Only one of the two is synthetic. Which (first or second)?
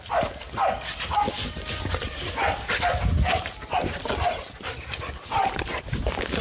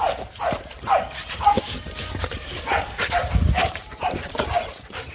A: second